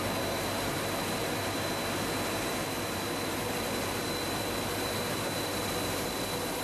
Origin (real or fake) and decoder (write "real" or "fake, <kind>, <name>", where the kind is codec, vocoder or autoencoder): real